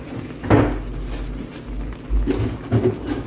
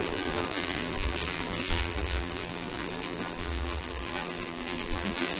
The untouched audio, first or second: first